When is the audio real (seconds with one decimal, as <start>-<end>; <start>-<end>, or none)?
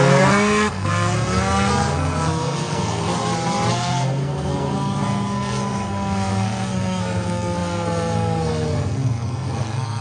3.1-3.7